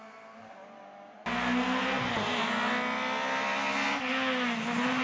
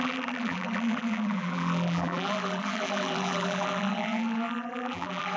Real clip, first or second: first